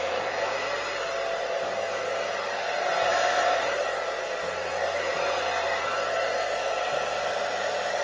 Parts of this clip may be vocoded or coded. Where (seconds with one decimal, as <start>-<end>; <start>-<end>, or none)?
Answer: none